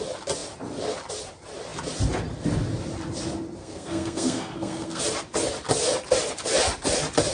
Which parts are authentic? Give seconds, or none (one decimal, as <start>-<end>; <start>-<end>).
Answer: 0.0-3.6; 5.0-7.3